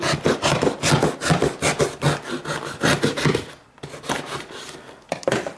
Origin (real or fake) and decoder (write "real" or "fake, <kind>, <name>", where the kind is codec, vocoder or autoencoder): real